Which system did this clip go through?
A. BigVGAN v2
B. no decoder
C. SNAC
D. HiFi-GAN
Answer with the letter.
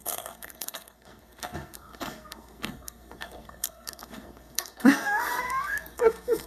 C